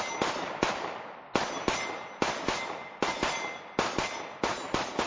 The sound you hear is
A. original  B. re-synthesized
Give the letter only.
A